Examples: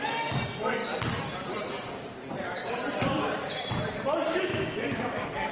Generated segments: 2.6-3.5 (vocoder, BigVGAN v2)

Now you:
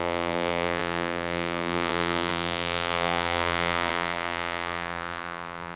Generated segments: 0.0-5.8 (vocoder, BigVGAN v2)

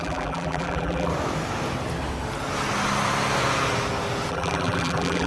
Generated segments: 0.0-1.1 (vocoder, BigVGAN v2); 4.3-5.3

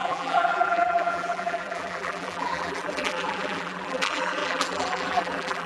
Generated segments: 0.0-5.7 (vocoder, BigVGAN v2)